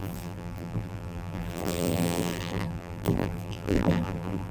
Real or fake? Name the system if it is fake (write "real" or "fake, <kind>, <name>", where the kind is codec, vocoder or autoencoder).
fake, vocoder, BigVGAN v2